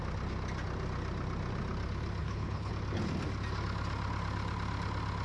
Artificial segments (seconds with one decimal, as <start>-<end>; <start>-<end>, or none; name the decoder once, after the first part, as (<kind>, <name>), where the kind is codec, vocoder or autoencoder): 2.2-2.7 (codec, HILCodec)